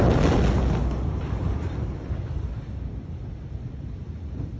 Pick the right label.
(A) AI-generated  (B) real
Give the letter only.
B